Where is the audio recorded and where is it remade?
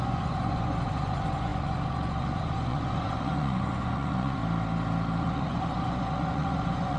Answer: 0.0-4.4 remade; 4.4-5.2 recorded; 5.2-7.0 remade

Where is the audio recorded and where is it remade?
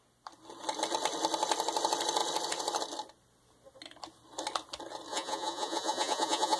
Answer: 0.0-5.1 recorded; 5.1-6.6 remade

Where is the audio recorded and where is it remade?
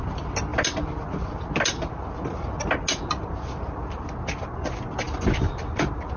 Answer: 0.0-6.2 recorded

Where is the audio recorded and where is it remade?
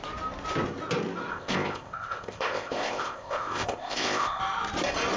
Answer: 0.0-1.3 recorded; 1.3-4.4 remade; 4.4-5.2 recorded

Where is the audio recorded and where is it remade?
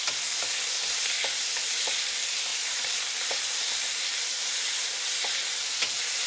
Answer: 0.0-1.5 recorded; 1.5-2.1 remade; 2.1-2.5 recorded; 2.5-4.0 remade; 4.0-6.3 recorded